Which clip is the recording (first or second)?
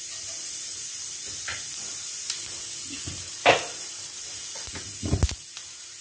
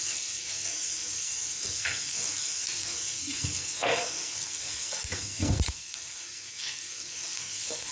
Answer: first